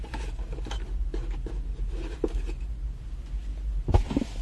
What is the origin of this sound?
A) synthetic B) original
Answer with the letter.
B